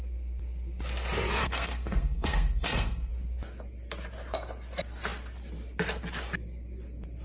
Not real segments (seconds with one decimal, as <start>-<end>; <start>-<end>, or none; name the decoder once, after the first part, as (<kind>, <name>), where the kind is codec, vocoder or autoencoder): 1.4-3.1 (codec, SNAC)